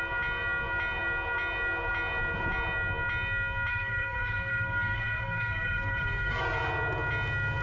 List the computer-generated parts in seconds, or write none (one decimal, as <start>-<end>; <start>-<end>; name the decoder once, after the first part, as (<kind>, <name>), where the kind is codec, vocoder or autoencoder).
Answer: 3.7-6.4 (codec, SNAC)

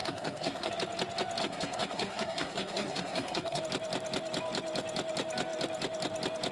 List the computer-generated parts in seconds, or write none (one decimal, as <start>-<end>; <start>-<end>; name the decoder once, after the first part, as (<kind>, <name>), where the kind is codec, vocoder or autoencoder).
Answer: 0.0-0.7 (codec, SNAC); 1.4-3.6

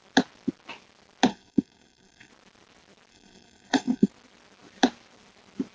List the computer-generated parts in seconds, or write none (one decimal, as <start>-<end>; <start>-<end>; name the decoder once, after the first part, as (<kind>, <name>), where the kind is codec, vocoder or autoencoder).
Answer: 1.3-2.3 (codec, SNAC); 3.1-4.1

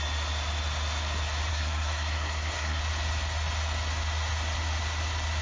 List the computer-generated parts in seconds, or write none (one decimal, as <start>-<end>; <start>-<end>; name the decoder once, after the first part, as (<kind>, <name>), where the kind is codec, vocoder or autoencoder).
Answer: 1.5-2.8 (codec, SNAC)

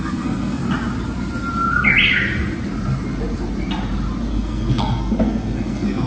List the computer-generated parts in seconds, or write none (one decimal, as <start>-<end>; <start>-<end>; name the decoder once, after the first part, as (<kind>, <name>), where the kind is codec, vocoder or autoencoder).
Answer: 0.0-0.6 (codec, SNAC); 4.3-6.1

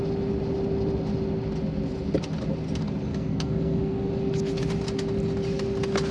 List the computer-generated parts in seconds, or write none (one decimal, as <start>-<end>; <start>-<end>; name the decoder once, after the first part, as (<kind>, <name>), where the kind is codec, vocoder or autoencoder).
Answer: 3.1-4.1 (codec, SNAC)

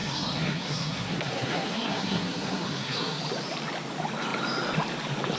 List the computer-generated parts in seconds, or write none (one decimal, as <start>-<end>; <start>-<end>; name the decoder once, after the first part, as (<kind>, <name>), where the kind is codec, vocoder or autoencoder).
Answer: 0.0-3.2 (codec, SNAC)